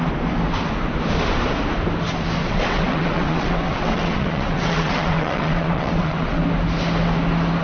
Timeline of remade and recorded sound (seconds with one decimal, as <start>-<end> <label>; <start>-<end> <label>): 0.0-2.4 recorded; 2.4-6.4 remade; 6.4-7.6 recorded